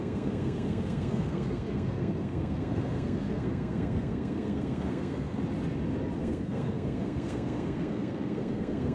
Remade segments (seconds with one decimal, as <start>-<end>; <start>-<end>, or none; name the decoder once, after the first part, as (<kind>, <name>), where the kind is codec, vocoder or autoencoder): 0.0-5.4 (codec, SNAC); 6.2-8.9